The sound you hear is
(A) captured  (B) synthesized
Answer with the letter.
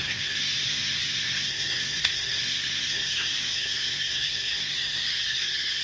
B